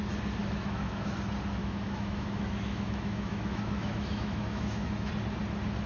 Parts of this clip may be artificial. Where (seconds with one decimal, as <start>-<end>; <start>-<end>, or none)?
0.4-1.1; 1.6-5.1